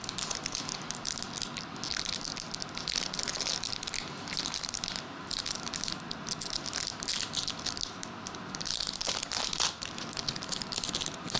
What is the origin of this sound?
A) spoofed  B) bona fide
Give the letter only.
B